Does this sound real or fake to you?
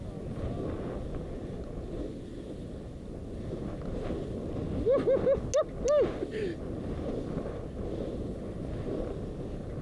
real